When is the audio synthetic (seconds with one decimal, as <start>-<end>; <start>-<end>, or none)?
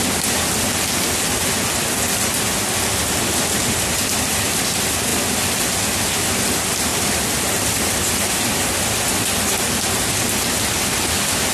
6.9-7.8